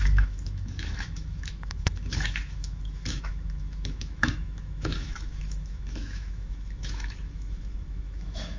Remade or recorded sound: remade